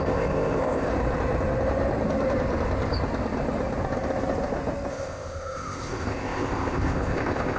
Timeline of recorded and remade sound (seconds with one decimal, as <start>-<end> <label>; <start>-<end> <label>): 0.0-0.9 remade; 0.9-4.9 recorded; 4.9-7.6 remade